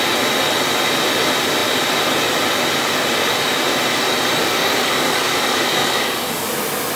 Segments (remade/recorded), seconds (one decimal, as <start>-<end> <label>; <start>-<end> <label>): 0.0-4.4 recorded; 4.4-6.5 remade; 6.5-7.0 recorded